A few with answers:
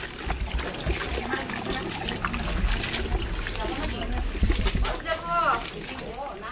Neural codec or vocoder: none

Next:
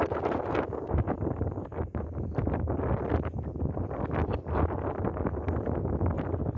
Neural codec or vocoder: none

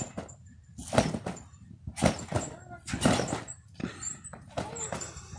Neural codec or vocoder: none